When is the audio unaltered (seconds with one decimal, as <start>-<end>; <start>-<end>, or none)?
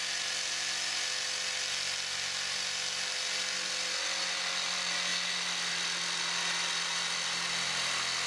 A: 0.0-8.3